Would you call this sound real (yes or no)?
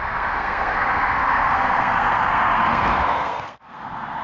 no